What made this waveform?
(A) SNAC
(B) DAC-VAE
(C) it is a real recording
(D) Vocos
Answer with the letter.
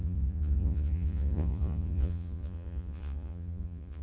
D